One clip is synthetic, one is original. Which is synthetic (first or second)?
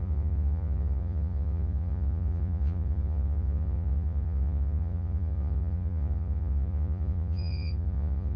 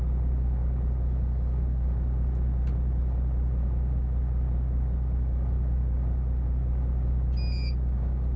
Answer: first